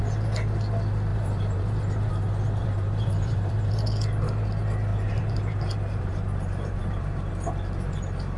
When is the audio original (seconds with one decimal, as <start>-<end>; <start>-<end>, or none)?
0.0-1.1; 2.1-2.6; 3.7-4.9; 7.3-8.4